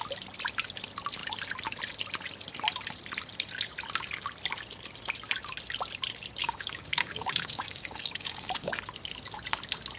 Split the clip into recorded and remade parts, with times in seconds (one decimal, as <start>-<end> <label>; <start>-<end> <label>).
0.0-6.4 recorded; 6.4-8.8 remade; 8.8-10.0 recorded